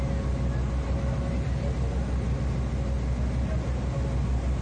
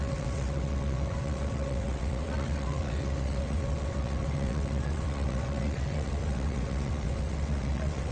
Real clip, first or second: first